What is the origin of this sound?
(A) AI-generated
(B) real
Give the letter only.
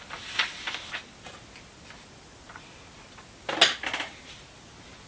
B